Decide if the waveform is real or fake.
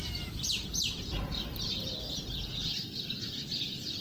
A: fake